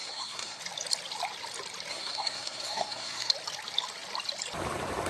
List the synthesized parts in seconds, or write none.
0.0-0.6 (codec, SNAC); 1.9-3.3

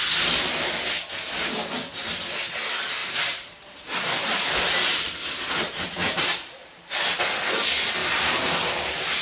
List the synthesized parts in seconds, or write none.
3.0-7.2 (vocoder, BigVGAN v2); 8.0-9.2